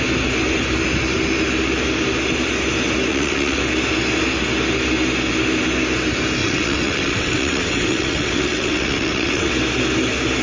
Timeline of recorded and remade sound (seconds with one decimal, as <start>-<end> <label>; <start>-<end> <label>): 0.0-3.1 recorded; 3.1-3.6 remade; 3.6-6.4 recorded; 6.4-9.5 remade; 9.5-10.4 recorded